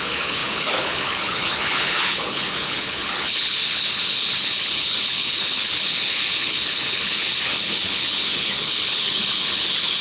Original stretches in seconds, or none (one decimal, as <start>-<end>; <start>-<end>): none